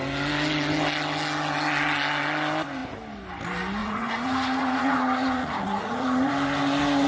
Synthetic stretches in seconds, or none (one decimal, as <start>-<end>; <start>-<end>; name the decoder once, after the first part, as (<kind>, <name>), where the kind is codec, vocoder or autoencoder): 3.8-6.3 (vocoder, Vocos)